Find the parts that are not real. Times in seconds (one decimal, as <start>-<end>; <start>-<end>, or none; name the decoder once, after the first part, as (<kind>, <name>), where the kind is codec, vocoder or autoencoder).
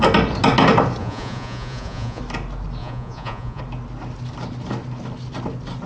1.0-2.2 (vocoder, Vocos); 2.8-3.6